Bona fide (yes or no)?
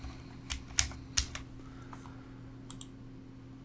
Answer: yes